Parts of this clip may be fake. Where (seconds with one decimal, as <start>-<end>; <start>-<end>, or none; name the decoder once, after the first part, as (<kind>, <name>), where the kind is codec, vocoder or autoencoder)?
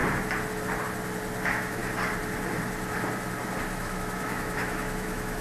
1.4-1.8 (autoencoder, DAC-VAE); 3.8-5.4